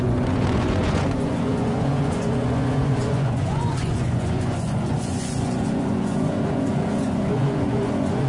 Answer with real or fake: fake